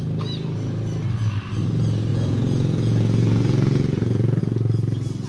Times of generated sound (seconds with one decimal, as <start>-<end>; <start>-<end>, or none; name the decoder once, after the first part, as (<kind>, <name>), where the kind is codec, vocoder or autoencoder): 2.1-4.4 (vocoder, Vocos)